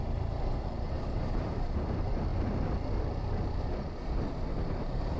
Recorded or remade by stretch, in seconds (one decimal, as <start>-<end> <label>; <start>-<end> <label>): 0.0-2.3 remade; 2.3-4.6 recorded; 4.6-5.2 remade